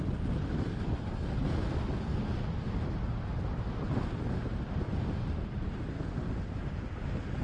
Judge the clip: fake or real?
real